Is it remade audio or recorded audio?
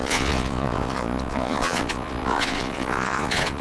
remade